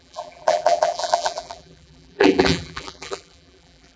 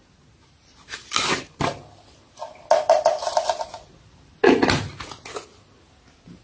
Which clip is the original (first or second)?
second